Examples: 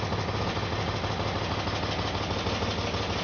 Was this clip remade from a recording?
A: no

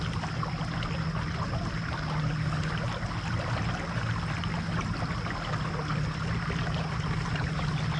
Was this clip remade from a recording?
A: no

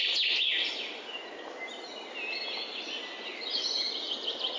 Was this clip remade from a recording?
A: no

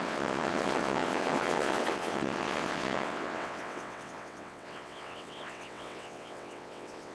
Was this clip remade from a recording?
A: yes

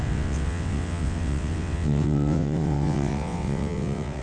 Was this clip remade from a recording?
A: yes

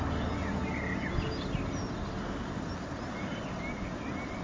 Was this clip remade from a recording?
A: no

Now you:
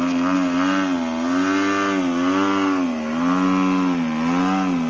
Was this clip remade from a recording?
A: no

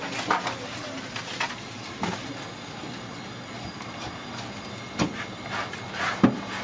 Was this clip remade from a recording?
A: no